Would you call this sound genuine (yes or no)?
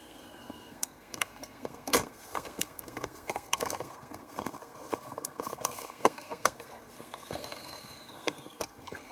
no